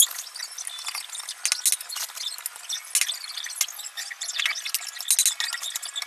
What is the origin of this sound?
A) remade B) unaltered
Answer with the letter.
B